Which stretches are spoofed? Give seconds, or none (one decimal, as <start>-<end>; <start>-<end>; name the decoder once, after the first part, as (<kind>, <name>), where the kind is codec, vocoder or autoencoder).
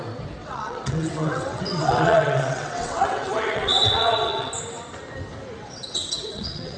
0.4-4.5 (vocoder, WaveNeXt); 5.6-6.8